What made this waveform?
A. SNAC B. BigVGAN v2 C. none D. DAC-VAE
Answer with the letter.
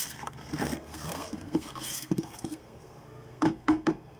A